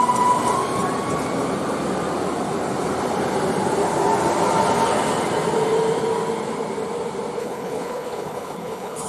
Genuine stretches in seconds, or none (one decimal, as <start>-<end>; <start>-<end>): 0.0-7.4